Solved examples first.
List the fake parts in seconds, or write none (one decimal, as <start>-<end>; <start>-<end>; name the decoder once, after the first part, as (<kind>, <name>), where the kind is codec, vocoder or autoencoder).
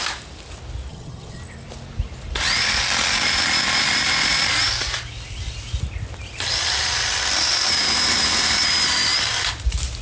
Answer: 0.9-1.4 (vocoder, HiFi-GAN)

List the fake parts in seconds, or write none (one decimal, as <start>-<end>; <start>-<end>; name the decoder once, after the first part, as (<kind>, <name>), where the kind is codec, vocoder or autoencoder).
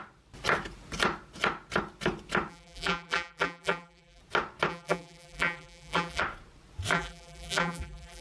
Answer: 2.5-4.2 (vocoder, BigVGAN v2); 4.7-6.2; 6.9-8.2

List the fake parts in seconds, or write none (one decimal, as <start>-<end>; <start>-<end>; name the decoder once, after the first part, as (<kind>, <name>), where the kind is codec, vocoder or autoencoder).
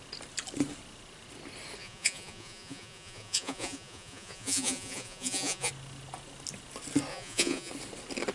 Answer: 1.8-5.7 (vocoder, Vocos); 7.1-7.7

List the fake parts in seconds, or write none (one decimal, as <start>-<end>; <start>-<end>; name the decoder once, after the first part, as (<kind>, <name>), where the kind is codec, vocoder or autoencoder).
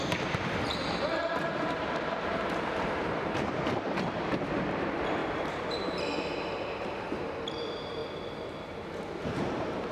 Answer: 0.0-8.0 (vocoder, BigVGAN v2); 9.2-9.9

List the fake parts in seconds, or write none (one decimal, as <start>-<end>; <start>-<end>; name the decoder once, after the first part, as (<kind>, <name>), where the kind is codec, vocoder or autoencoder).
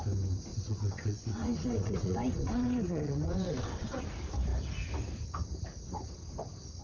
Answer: 0.5-4.0 (vocoder, WaveNeXt)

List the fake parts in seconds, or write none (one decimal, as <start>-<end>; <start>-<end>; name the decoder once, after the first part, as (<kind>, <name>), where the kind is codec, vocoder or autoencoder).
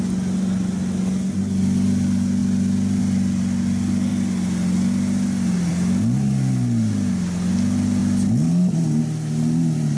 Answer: none